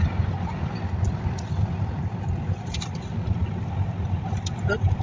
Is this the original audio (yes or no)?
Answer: yes